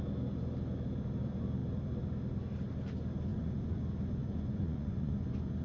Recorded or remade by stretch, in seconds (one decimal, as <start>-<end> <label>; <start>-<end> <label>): 0.0-3.3 recorded; 3.3-3.8 remade; 3.8-4.2 recorded; 4.2-5.1 remade; 5.1-5.6 recorded